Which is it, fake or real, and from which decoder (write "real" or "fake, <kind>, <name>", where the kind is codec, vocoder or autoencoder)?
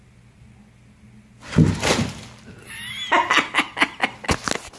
real